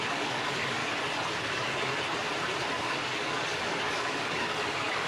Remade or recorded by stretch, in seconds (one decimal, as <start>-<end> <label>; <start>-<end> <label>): 0.0-0.8 remade; 0.8-1.4 recorded; 1.4-1.9 remade; 1.9-2.8 recorded; 2.8-5.1 remade